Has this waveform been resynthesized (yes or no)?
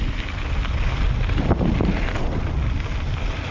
no